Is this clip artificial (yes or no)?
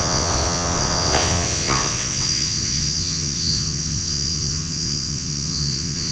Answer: yes